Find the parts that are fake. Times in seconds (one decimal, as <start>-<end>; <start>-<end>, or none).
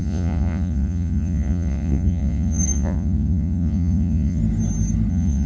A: 0.0-4.4; 5.1-5.5